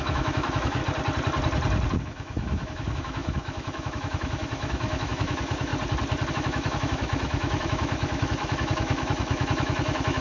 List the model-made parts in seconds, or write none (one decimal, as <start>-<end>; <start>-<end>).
0.0-0.8; 2.0-5.7; 6.3-10.2